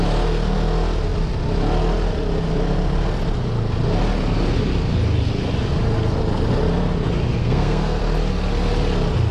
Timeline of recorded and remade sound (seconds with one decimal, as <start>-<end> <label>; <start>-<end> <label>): 0.0-7.4 recorded; 7.4-8.0 remade; 8.0-9.3 recorded